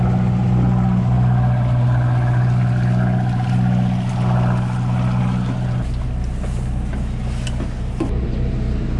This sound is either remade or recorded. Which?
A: recorded